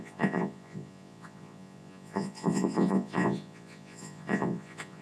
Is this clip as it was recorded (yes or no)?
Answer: no